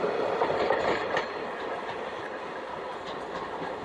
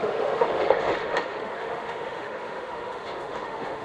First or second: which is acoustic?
first